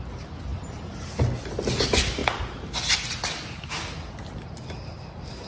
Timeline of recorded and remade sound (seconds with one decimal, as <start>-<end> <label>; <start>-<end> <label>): 0.0-5.5 recorded